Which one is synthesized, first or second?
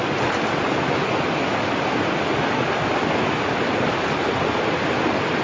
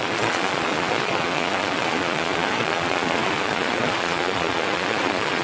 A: second